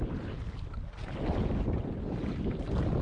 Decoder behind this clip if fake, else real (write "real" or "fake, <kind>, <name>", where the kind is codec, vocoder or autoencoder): real